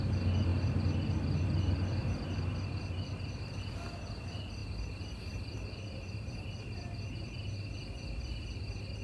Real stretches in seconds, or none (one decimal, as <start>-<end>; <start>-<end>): 0.0-4.6; 7.3-9.0